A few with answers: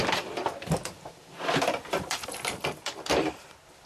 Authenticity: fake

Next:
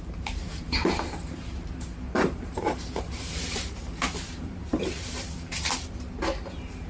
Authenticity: fake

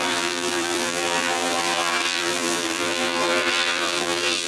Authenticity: fake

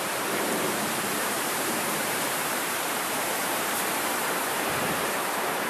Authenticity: fake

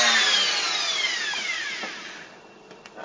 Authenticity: real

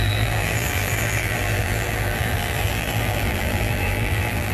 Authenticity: fake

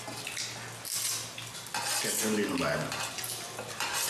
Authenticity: real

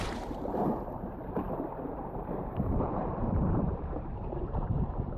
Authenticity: fake